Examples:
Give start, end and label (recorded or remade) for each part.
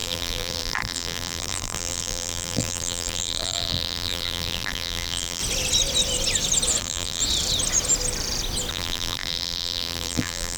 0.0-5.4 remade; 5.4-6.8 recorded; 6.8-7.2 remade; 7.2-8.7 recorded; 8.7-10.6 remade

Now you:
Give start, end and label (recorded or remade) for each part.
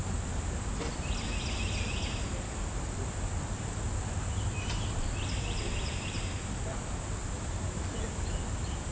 0.0-1.0 remade; 1.0-7.2 recorded; 7.2-7.8 remade; 7.8-8.9 recorded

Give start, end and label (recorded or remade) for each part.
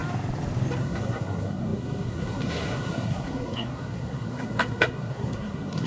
0.0-0.8 recorded; 0.8-5.9 remade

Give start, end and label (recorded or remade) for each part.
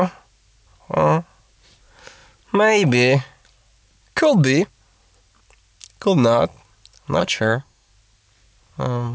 0.0-7.2 recorded; 7.2-7.9 remade; 7.9-9.1 recorded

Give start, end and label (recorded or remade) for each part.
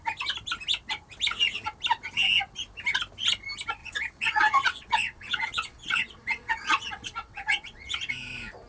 0.0-3.8 recorded; 3.8-8.1 remade; 8.1-8.7 recorded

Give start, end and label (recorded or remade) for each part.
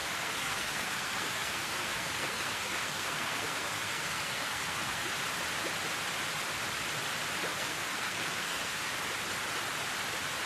0.0-5.1 remade; 5.1-7.5 recorded; 7.5-8.9 remade; 8.9-10.5 recorded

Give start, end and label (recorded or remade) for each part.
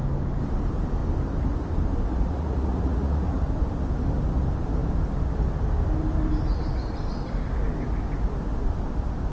0.0-2.1 recorded; 2.1-3.4 remade; 3.4-9.3 recorded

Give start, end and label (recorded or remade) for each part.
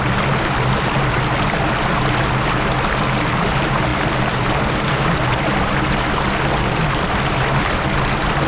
0.0-8.5 recorded